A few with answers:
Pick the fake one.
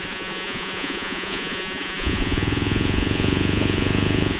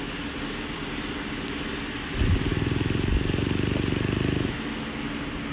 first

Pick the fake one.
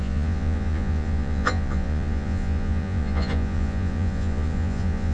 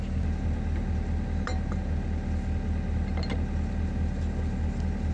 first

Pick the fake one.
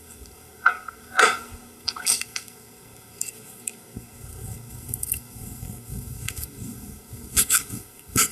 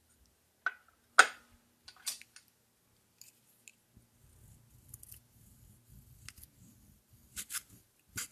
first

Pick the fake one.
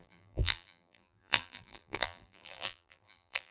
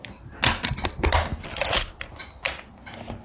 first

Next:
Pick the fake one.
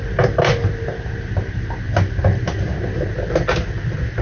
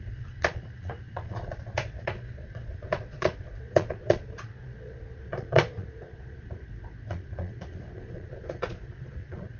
second